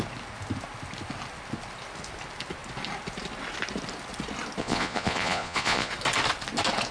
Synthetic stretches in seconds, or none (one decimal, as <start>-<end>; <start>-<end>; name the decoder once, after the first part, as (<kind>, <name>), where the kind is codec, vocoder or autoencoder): 4.6-5.9 (vocoder, Vocos)